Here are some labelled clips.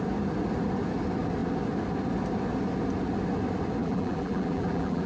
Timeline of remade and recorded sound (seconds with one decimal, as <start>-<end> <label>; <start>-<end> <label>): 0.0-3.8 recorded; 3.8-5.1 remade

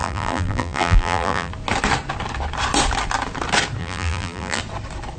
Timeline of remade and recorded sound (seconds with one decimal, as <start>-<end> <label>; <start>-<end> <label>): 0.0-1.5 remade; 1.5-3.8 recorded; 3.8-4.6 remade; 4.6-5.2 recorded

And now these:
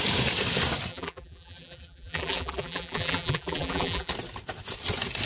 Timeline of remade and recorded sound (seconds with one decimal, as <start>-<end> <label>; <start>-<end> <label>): 0.0-0.9 recorded; 0.9-4.1 remade; 4.1-5.3 recorded

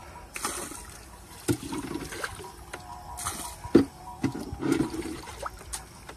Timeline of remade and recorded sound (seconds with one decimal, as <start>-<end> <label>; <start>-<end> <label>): 0.0-4.7 recorded; 4.7-5.3 remade; 5.3-6.2 recorded

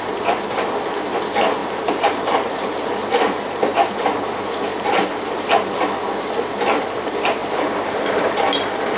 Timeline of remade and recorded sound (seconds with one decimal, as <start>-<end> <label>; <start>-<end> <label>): 0.0-1.6 recorded; 1.6-3.9 remade; 3.9-4.7 recorded; 4.7-5.7 remade; 5.7-9.0 recorded

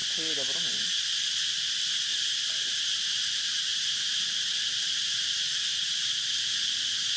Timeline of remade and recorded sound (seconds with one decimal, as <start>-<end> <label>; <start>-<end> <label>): 0.0-2.1 recorded; 2.1-6.4 remade; 6.4-7.2 recorded

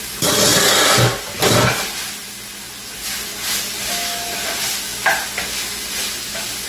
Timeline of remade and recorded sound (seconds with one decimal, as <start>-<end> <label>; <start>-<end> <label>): 0.0-6.7 recorded